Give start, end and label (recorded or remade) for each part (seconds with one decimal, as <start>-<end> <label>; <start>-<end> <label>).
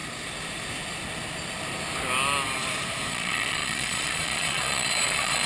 0.0-3.1 recorded; 3.1-5.5 remade